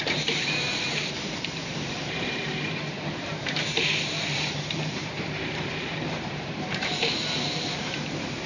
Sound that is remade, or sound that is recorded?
remade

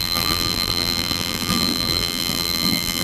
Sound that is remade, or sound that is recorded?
remade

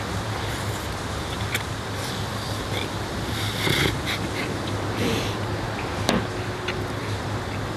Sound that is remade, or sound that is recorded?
recorded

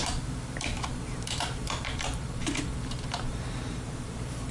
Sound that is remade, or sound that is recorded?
remade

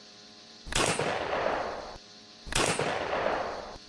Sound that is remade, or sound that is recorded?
recorded